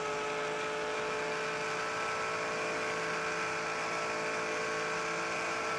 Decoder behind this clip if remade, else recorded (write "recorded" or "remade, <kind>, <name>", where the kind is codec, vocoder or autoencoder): recorded